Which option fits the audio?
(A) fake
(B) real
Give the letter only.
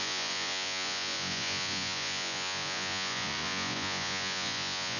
A